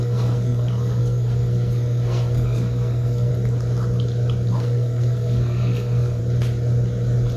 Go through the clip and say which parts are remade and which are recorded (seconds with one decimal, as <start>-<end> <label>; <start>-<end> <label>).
0.0-3.3 remade; 3.3-4.5 recorded; 4.5-6.2 remade; 6.2-7.4 recorded